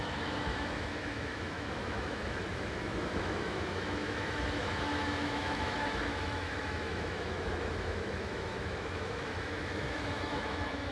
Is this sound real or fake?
fake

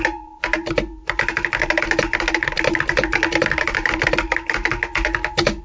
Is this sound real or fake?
real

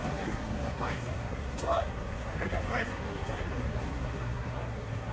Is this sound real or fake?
fake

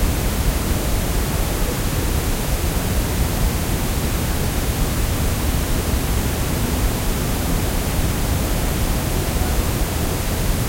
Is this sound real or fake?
fake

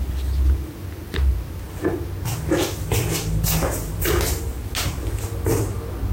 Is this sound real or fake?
real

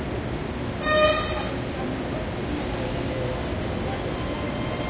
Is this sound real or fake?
real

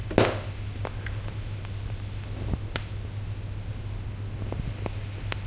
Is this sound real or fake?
real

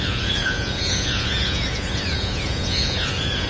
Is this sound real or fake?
fake